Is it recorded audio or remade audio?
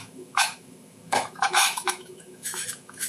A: remade